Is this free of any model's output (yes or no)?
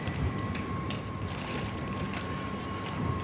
no